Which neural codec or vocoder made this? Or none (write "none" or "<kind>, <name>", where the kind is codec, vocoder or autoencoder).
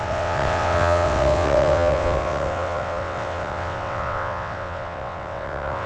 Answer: vocoder, WaveNeXt